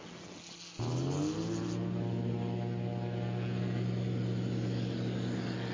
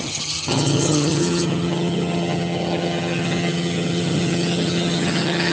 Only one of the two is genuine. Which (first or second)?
first